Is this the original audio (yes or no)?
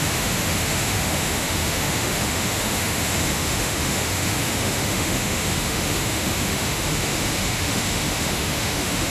no